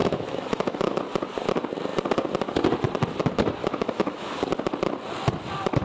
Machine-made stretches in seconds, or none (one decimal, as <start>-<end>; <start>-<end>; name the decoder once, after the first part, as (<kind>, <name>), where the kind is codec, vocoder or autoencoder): 0.0-1.0 (autoencoder, DAC-VAE); 3.6-4.4